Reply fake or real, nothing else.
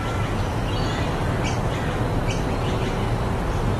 real